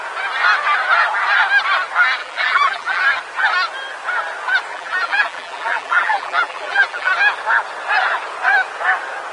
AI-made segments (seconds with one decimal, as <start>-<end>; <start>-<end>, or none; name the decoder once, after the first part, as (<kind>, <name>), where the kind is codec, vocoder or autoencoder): 2.2-3.0 (vocoder, BigVGAN v2); 4.7-7.1